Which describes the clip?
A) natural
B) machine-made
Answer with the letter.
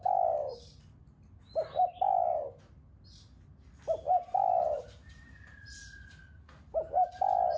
A